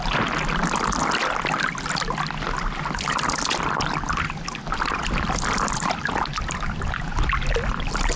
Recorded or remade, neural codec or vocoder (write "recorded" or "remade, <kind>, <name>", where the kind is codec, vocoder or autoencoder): recorded